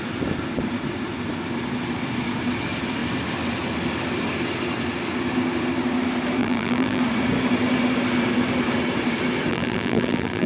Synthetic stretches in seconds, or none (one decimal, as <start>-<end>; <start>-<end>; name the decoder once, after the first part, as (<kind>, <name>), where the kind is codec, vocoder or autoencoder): 6.4-7.0 (vocoder, BigVGAN v2); 9.5-10.5